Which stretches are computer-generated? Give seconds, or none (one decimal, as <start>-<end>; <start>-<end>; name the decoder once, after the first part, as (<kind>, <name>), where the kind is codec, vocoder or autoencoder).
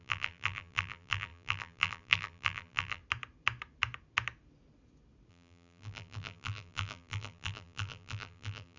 0.0-3.0 (vocoder, BigVGAN v2); 5.3-8.8